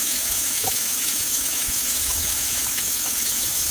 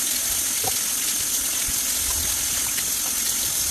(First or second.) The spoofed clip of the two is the first